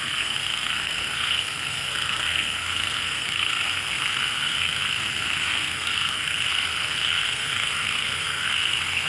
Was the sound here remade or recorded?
remade